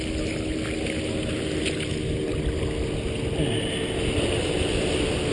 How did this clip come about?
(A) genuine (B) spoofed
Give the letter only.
A